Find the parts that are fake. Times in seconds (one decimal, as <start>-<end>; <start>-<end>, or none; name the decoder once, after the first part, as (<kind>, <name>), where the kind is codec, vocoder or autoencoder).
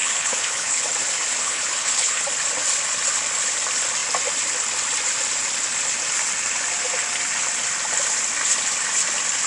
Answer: 0.0-0.8 (codec, HILCodec); 1.4-2.2